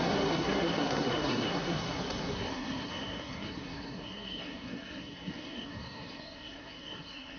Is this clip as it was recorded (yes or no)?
no